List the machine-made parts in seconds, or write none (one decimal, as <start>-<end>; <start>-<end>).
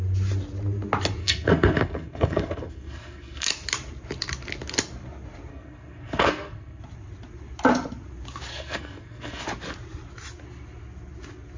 1.2-3.5; 5.5-6.8; 8.5-9.4